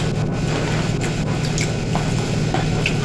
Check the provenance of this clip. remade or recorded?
recorded